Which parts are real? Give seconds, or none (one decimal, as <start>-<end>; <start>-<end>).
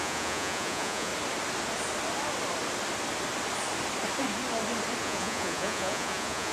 1.1-5.0